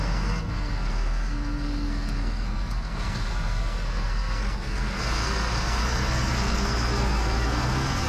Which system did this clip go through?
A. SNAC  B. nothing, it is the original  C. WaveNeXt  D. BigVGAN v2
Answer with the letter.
A